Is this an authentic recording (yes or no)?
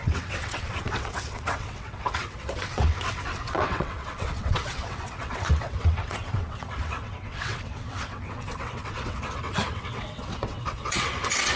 no